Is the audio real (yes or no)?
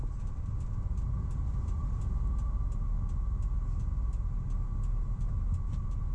yes